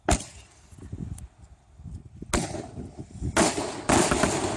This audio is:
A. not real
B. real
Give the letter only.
B